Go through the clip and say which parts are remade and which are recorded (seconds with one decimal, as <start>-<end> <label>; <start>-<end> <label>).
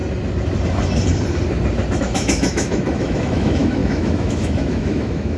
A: 0.0-2.0 recorded; 2.0-5.4 remade